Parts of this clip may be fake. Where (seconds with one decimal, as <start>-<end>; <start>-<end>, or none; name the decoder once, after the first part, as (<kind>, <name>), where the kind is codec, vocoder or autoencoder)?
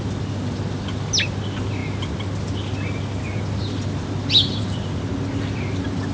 none